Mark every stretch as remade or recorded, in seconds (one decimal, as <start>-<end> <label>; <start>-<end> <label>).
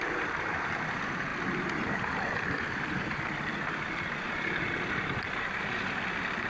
0.0-6.5 recorded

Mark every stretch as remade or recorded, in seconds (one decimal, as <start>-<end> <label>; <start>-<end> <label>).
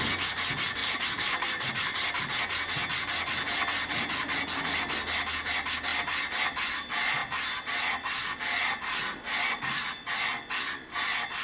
0.0-0.8 recorded; 0.8-2.2 remade; 2.2-11.4 recorded